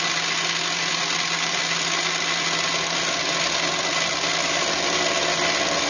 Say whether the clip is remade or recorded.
recorded